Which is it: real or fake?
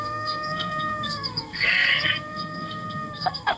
fake